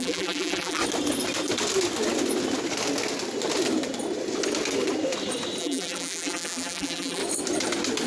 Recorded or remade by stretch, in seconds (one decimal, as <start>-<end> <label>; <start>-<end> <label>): 0.0-0.8 remade; 0.8-5.6 recorded; 5.6-7.2 remade; 7.2-8.1 recorded